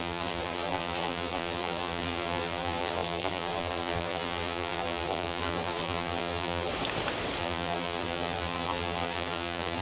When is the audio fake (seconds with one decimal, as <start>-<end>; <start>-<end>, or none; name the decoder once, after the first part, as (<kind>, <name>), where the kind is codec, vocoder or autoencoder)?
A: 0.0-6.7 (vocoder, BigVGAN v2); 7.4-9.8